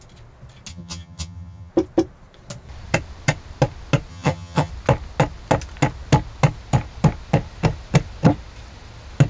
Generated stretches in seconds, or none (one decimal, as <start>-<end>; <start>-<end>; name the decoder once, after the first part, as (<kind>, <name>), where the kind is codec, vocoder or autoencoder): 0.7-1.7 (vocoder, HiFi-GAN); 4.1-4.7

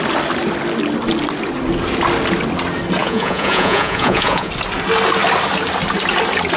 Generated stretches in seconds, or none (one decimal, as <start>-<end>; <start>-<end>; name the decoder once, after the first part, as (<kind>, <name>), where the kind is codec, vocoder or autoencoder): 3.0-4.5 (vocoder, Vocos)

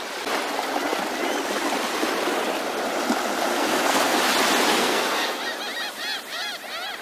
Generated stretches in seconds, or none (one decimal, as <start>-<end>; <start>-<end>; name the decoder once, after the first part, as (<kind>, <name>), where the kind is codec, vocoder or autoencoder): 3.5-4.2 (codec, SNAC); 4.7-5.4

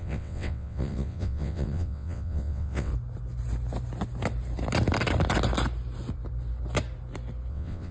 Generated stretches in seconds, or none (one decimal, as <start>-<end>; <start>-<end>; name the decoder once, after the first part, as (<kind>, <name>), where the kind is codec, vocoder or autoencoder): 0.0-2.9 (vocoder, WaveNeXt); 7.5-7.9

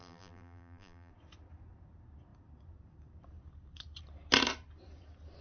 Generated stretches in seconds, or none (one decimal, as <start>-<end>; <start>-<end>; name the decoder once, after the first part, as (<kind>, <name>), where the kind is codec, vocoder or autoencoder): 0.0-1.1 (vocoder, BigVGAN v2)

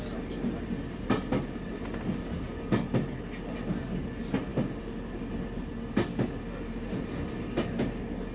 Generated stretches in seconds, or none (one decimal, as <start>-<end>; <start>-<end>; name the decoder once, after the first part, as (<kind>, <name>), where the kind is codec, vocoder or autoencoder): none